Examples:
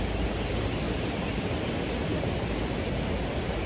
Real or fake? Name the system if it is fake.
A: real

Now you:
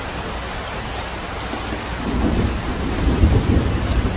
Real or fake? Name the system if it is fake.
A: real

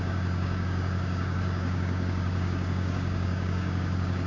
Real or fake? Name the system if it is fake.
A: fake, codec, DAC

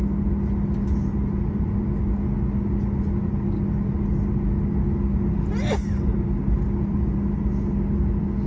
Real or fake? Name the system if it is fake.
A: real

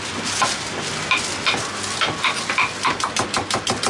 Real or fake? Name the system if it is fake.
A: real